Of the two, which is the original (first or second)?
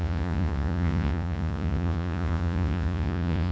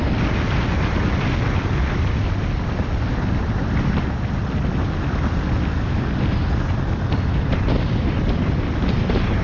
second